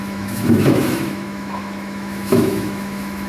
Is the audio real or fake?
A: fake